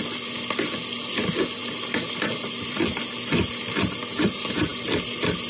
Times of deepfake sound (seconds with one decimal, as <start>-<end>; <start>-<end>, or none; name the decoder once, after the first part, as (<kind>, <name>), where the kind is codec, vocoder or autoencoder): none